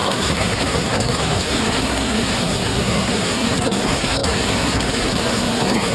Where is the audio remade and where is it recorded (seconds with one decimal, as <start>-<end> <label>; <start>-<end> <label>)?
0.0-5.9 remade